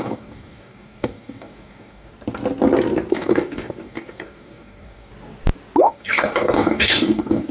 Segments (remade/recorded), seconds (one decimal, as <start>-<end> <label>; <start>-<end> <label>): 0.0-2.1 remade; 2.1-3.1 recorded; 3.1-5.1 remade; 5.1-5.8 recorded; 5.8-7.5 remade